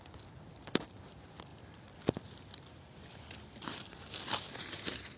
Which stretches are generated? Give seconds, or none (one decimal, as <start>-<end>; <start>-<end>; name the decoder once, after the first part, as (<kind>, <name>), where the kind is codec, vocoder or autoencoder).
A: 0.0-5.2 (vocoder, BigVGAN v2)